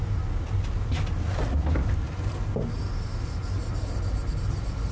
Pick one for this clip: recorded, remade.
recorded